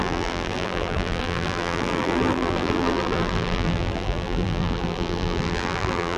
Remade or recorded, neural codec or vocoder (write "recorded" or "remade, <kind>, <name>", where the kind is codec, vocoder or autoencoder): remade, vocoder, BigVGAN v2